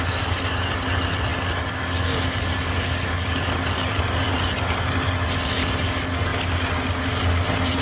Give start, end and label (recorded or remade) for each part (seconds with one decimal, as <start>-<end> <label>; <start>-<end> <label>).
0.0-7.8 recorded